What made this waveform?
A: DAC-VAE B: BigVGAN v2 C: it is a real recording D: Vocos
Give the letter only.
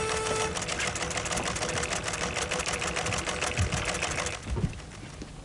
C